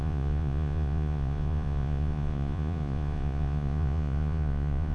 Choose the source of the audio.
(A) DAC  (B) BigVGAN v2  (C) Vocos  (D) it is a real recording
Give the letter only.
C